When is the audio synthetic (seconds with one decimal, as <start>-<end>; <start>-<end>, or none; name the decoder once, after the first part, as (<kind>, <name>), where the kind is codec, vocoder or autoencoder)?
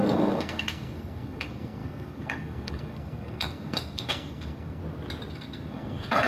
0.0-4.8 (codec, SNAC); 5.3-6.3